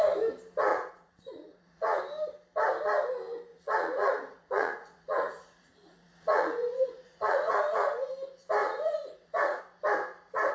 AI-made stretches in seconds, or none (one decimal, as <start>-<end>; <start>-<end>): 0.7-2.0; 3.5-8.1; 8.6-9.6